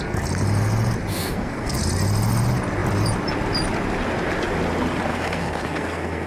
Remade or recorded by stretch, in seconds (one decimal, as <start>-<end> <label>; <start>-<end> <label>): 0.0-1.1 recorded; 1.1-1.8 remade; 1.8-5.1 recorded; 5.1-6.3 remade